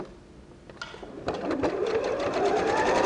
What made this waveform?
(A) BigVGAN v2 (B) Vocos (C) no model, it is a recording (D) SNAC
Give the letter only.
C